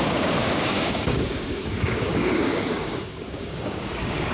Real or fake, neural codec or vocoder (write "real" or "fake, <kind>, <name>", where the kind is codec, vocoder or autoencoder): fake, codec, DAC